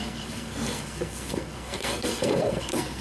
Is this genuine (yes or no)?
no